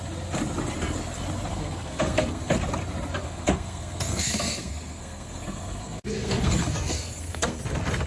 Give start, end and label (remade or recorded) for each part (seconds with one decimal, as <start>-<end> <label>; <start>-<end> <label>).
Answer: 0.0-1.5 recorded; 1.5-2.5 remade; 2.5-3.2 recorded; 3.2-7.6 remade; 7.6-8.1 recorded